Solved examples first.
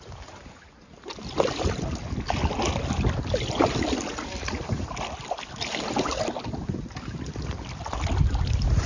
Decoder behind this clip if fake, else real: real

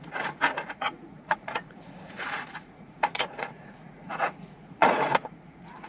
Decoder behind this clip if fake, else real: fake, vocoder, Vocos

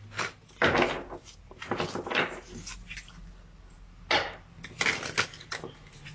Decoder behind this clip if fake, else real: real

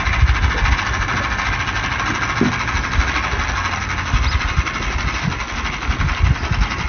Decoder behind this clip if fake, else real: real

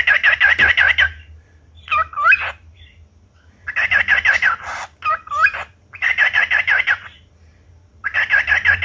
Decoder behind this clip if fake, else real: real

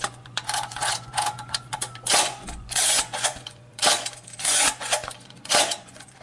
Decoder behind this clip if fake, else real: fake, vocoder, Vocos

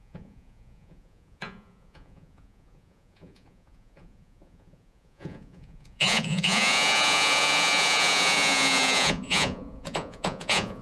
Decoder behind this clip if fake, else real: fake, vocoder, Vocos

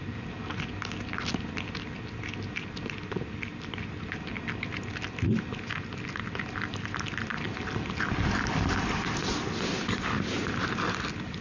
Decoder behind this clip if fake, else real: real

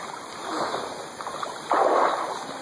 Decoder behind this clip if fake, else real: real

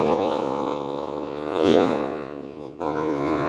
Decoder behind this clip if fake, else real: fake, vocoder, Vocos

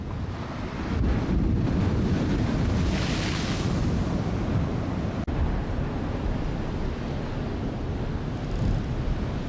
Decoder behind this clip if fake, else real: real